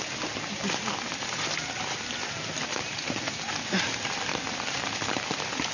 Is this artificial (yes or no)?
no